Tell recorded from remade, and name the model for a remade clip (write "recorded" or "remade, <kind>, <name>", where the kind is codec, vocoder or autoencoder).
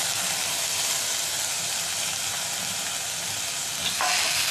recorded